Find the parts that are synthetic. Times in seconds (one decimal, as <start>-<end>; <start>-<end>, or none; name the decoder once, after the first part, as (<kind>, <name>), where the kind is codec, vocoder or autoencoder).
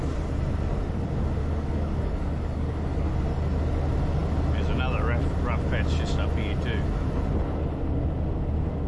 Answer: 1.4-3.1 (codec, DAC)